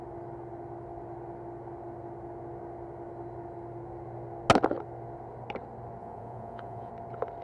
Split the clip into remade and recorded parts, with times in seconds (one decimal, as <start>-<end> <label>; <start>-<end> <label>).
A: 0.0-6.0 recorded; 6.0-6.9 remade; 6.9-7.4 recorded